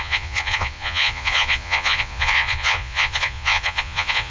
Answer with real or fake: fake